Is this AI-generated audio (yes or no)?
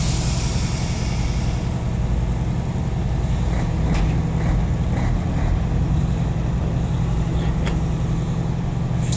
no